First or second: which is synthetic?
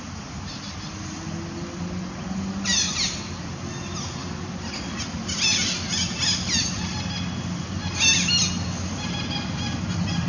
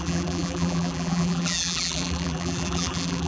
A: second